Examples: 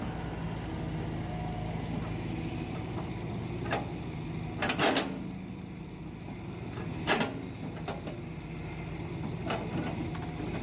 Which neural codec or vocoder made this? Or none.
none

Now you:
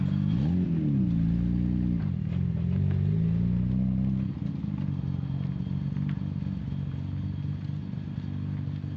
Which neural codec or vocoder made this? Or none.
none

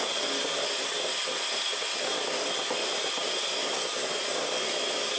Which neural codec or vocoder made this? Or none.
none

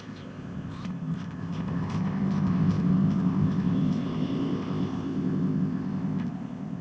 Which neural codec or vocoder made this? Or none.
codec, ZipCodec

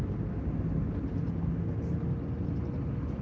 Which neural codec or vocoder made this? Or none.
none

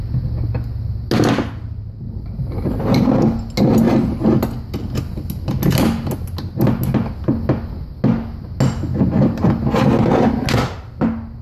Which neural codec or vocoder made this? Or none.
none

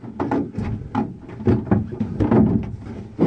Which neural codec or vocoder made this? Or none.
none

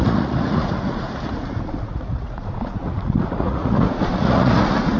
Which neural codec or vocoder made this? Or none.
vocoder, Vocos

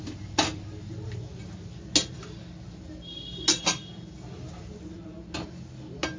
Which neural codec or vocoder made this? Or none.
none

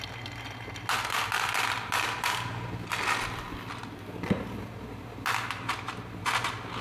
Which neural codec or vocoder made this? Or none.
none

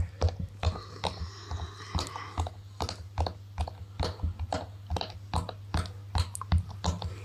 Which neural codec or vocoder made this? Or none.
none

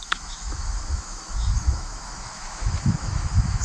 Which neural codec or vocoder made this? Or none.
autoencoder, DAC-VAE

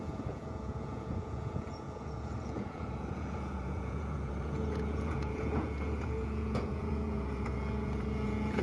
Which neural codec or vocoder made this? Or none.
vocoder, Vocos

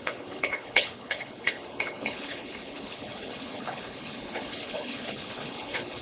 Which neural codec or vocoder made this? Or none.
codec, HILCodec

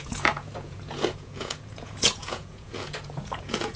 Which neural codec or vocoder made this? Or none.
vocoder, Vocos